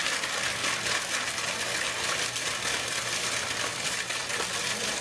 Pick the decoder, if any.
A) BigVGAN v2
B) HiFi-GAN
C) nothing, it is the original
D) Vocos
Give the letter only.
C